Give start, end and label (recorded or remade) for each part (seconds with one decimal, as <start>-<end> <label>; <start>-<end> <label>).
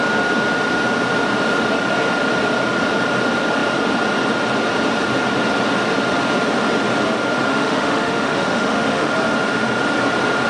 0.0-7.5 recorded; 7.5-9.1 remade; 9.1-10.5 recorded